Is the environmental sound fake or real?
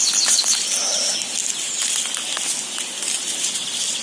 real